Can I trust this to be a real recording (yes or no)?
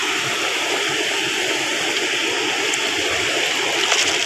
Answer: yes